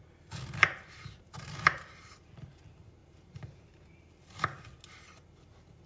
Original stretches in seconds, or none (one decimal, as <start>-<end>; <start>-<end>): 0.0-3.0; 4.0-5.9